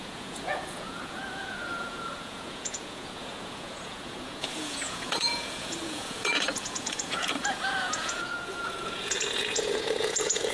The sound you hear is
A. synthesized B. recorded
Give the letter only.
A